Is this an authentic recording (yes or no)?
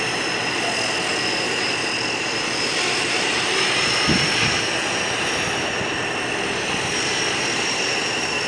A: no